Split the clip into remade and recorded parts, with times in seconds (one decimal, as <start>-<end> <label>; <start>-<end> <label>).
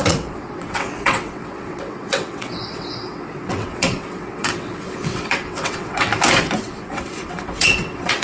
0.0-6.1 remade; 6.1-6.6 recorded; 6.6-8.2 remade